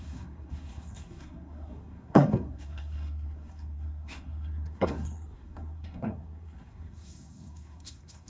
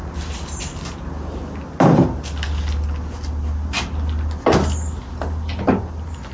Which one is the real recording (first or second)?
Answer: second